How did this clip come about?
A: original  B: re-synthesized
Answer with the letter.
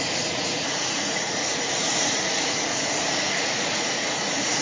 B